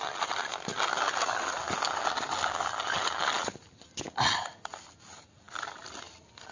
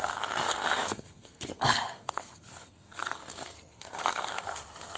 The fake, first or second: second